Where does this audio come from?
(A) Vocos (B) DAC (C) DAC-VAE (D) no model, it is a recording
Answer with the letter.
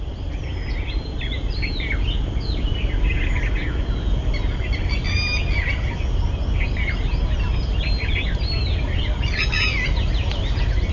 D